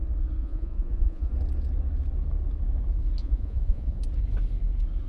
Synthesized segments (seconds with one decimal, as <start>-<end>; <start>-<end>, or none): 0.4-1.3; 3.2-4.0